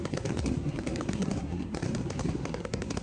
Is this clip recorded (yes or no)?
no